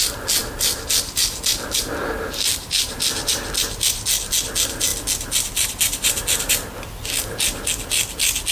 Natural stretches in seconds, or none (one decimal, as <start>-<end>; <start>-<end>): 0.0-8.5